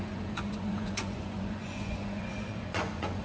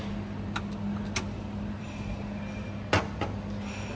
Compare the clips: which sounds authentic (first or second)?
second